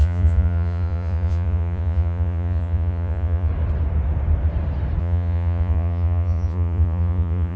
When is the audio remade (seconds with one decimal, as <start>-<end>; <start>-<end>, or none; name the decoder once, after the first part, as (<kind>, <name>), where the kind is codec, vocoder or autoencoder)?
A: 0.0-3.5 (vocoder, Vocos); 5.0-7.6